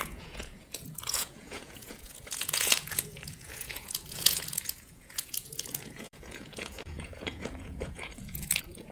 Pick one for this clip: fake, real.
fake